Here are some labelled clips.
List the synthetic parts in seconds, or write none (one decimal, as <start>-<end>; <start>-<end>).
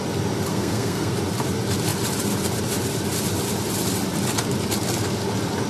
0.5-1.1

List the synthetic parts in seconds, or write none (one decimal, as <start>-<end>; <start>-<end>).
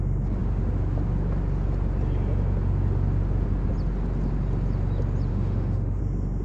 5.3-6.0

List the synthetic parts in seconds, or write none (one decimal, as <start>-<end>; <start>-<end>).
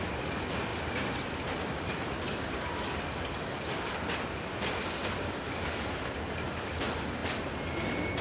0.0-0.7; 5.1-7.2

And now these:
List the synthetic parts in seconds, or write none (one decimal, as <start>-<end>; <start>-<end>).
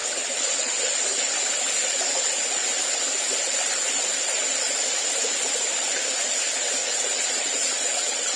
0.0-0.7; 6.8-8.4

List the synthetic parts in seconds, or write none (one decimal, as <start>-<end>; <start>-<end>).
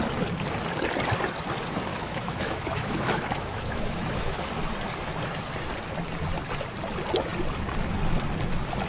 1.9-4.4